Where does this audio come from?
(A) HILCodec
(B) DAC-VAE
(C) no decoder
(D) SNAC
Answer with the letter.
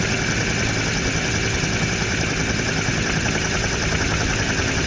C